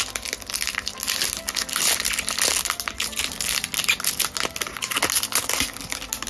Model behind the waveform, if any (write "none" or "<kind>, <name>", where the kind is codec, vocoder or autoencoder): none